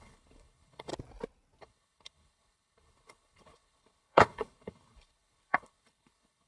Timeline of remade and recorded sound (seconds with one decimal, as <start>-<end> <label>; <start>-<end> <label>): 0.0-0.9 remade; 0.9-1.6 recorded; 1.6-6.5 remade